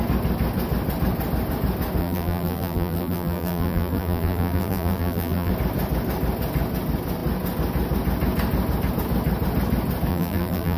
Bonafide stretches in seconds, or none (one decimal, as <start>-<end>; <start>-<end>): 0.0-2.0; 5.5-10.1

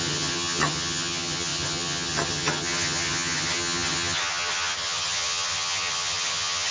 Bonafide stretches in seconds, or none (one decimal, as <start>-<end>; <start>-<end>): none

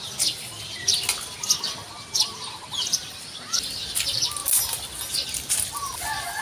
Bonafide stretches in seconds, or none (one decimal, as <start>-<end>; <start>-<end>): 0.0-6.4

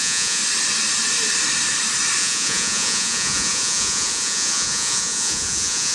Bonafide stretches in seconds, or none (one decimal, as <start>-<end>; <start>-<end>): 0.4-2.2